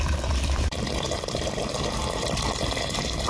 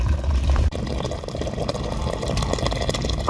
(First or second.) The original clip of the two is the second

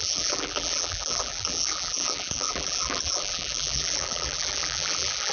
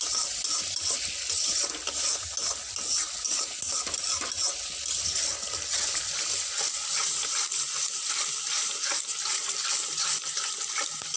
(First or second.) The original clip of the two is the second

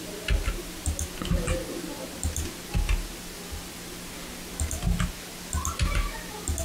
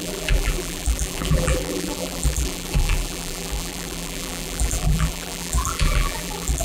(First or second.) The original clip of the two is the first